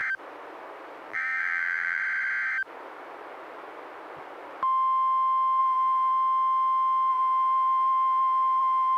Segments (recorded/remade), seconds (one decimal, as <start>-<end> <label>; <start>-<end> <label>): 0.0-1.1 recorded; 1.1-2.0 remade; 2.0-5.6 recorded; 5.6-6.1 remade; 6.1-7.1 recorded; 7.1-9.0 remade

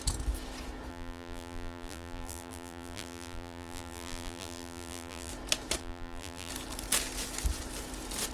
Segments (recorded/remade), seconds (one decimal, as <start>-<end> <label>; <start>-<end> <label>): 0.0-0.9 recorded; 0.9-5.3 remade; 5.3-5.8 recorded; 5.8-6.5 remade; 6.5-8.3 recorded

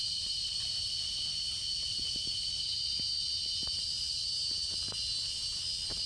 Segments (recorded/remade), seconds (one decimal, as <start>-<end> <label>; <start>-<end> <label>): 0.0-0.9 remade; 0.9-1.6 recorded; 1.6-2.5 remade; 2.5-6.1 recorded

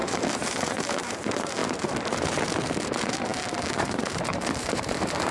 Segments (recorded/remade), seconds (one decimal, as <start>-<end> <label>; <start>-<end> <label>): 0.0-5.3 remade